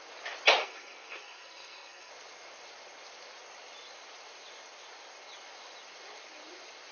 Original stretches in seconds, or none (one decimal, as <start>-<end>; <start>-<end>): 0.0-0.6; 2.1-6.9